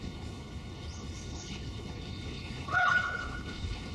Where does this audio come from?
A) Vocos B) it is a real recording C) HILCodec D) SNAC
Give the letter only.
C